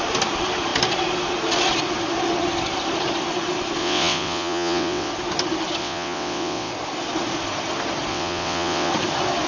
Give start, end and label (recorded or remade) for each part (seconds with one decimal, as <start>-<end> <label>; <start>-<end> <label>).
0.0-3.8 recorded; 3.8-5.1 remade; 5.1-5.8 recorded; 5.8-6.7 remade; 6.7-8.1 recorded; 8.1-8.9 remade; 8.9-9.5 recorded